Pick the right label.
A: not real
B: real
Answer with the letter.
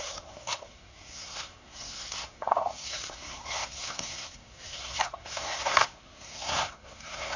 A